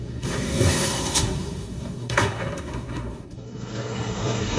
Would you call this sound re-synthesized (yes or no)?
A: yes